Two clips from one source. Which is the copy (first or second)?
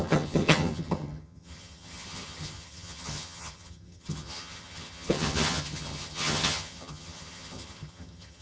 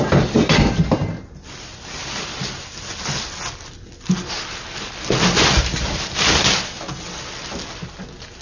first